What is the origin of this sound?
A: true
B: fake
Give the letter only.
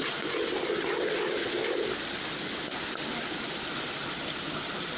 A